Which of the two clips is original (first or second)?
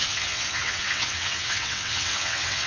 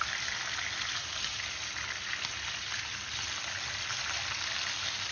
second